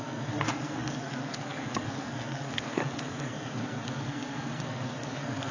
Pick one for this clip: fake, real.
fake